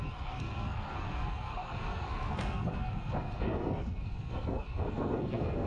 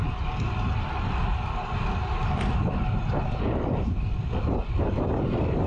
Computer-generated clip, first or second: first